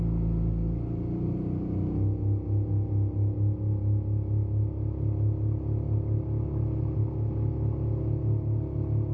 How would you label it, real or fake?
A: real